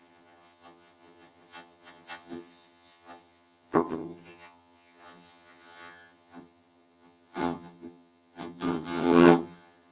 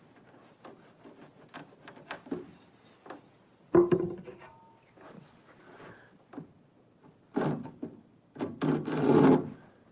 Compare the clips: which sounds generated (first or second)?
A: first